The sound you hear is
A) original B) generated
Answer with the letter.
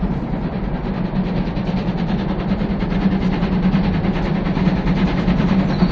A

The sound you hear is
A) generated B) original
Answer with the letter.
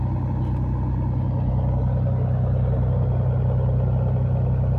B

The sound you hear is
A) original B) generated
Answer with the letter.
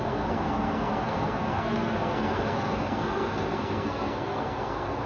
B